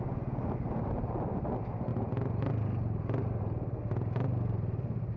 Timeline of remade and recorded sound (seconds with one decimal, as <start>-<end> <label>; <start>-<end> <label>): 0.0-5.2 recorded